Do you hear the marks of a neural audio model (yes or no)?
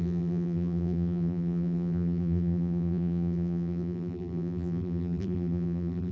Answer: yes